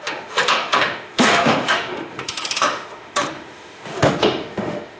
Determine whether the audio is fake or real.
fake